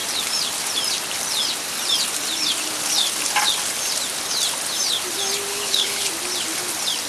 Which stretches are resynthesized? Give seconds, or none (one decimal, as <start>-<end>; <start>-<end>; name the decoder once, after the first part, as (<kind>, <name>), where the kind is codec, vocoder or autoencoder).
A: 5.5-6.1 (codec, HILCodec)